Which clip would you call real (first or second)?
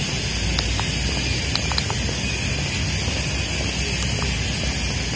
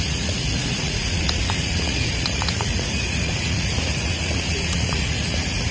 first